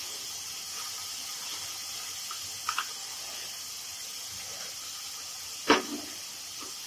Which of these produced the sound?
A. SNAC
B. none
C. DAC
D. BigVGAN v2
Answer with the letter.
B